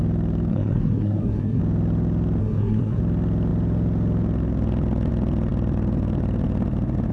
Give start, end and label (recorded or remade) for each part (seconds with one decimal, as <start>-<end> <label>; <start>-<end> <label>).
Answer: 0.0-0.5 recorded; 0.5-1.6 remade; 1.6-2.4 recorded; 2.4-3.0 remade; 3.0-7.1 recorded